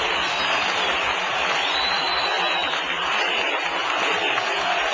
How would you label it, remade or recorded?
recorded